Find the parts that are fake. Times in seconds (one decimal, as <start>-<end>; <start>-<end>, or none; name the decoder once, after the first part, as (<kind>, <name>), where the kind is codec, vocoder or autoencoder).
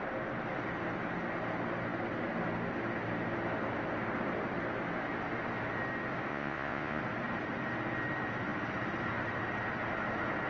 6.3-7.0 (vocoder, Vocos)